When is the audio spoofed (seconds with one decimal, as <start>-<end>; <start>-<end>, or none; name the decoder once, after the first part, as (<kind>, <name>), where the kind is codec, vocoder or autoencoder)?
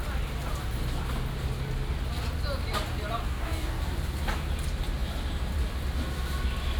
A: 3.2-3.8 (codec, DAC)